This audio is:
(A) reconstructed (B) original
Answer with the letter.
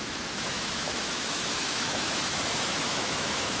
A